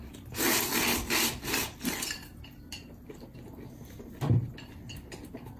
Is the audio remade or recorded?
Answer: recorded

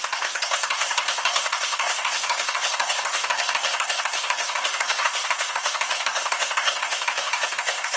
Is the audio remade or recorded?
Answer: remade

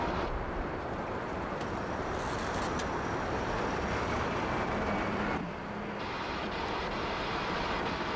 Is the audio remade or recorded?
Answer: recorded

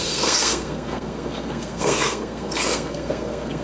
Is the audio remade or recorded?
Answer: remade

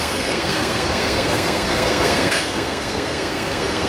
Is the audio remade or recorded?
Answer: remade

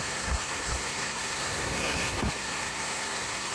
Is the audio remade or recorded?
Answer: remade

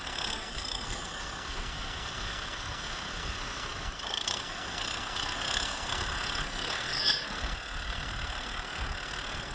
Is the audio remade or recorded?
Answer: remade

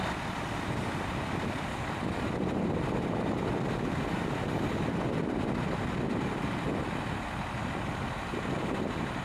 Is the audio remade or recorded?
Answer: recorded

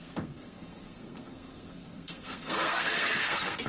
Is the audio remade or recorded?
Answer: remade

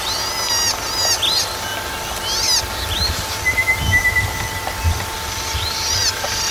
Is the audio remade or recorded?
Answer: recorded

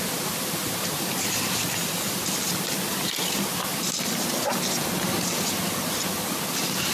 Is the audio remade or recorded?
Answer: recorded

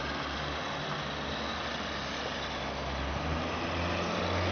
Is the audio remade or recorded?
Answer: recorded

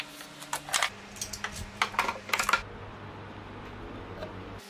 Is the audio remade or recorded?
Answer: recorded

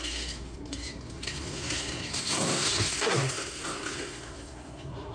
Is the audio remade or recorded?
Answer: remade